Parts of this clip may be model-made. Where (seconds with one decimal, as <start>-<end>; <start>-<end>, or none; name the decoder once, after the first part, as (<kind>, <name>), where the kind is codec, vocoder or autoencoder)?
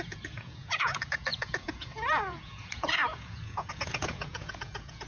0.0-5.1 (vocoder, Vocos)